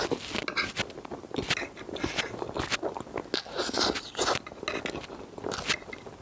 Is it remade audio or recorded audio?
recorded